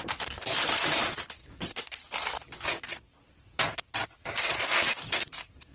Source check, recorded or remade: recorded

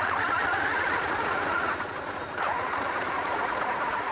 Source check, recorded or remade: remade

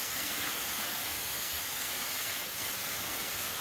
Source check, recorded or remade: remade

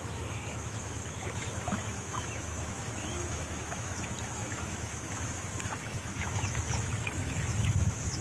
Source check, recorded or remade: remade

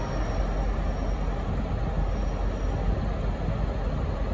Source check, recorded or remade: recorded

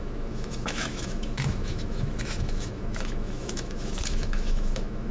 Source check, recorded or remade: remade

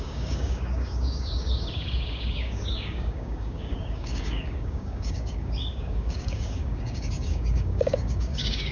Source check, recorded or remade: remade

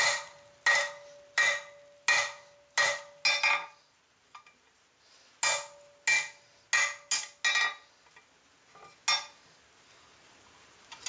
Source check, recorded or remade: recorded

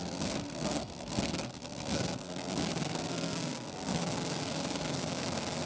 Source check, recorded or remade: remade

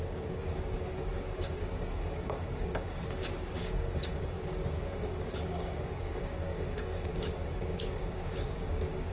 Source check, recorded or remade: remade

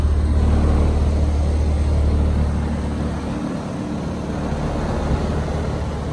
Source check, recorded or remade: recorded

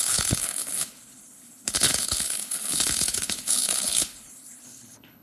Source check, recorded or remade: remade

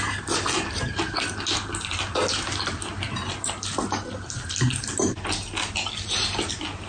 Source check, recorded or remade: recorded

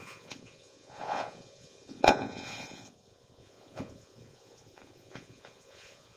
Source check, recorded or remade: remade